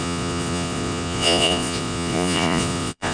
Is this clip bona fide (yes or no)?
no